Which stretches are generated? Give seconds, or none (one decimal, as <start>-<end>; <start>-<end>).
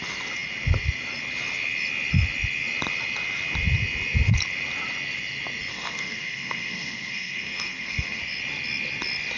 5.7-8.2